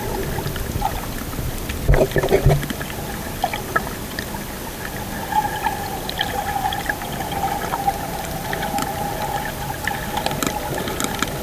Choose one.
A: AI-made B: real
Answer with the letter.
B